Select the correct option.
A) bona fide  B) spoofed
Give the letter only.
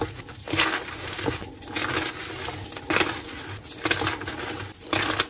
A